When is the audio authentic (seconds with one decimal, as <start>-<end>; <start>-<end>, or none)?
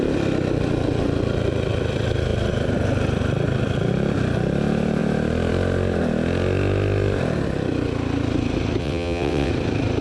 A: 0.0-8.8; 9.5-10.0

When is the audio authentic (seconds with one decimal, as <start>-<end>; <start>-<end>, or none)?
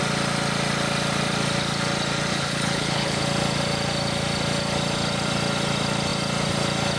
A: 0.0-2.3; 3.2-7.0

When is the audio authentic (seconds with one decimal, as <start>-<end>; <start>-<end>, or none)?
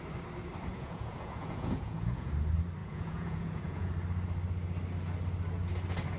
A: 0.0-0.7; 2.3-2.8; 3.9-6.2